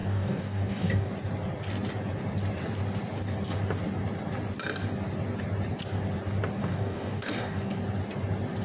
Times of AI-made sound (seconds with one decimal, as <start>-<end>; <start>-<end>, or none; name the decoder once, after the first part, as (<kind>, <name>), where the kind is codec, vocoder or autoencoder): 0.0-1.1 (codec, DAC); 6.6-7.7